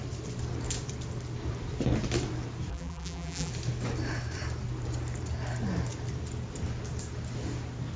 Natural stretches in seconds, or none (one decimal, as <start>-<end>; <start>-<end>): 0.0-2.7; 3.5-8.0